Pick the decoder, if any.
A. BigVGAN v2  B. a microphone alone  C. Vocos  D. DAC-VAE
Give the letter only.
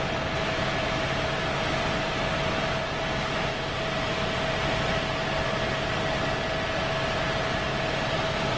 B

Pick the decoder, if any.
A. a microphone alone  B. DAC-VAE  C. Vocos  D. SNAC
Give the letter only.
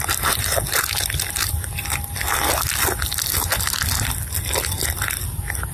A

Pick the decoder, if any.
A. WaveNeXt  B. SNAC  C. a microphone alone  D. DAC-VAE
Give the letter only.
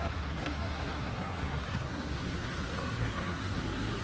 B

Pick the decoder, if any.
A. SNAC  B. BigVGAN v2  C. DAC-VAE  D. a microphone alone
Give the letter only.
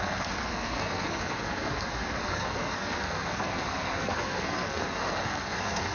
A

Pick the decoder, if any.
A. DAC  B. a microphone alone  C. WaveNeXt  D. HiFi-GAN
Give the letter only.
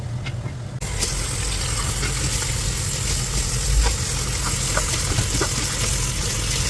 B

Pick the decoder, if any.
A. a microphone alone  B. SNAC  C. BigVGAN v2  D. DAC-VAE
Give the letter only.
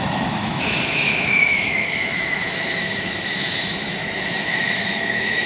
D